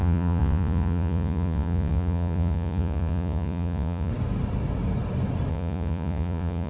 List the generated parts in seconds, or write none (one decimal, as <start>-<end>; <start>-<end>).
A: 0.0-4.1; 5.5-6.7